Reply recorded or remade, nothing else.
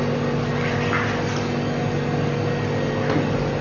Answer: recorded